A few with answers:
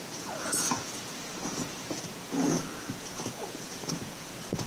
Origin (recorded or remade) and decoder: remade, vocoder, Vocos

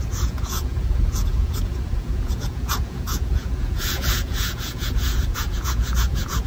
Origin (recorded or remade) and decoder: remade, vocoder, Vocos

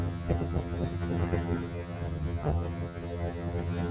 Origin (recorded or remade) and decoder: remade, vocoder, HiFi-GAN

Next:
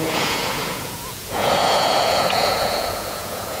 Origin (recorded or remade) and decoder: remade, vocoder, Vocos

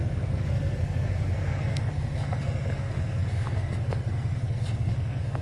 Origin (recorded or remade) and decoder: remade, codec, SNAC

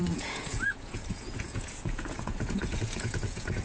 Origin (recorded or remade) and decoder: remade, vocoder, Vocos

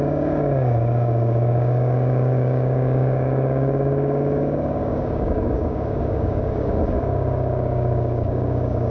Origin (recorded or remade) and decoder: remade, codec, DAC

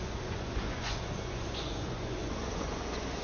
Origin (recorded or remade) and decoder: remade, vocoder, Vocos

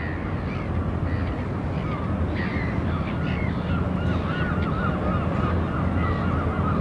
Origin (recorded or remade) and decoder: recorded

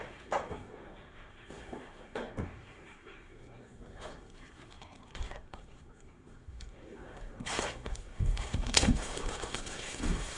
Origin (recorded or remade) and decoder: remade, codec, SNAC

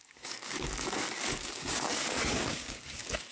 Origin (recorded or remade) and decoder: remade, codec, DAC